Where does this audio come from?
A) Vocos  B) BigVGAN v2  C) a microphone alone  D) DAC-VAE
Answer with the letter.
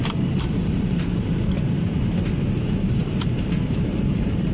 B